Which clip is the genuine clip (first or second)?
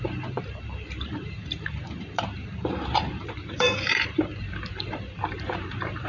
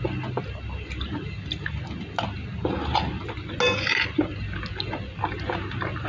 second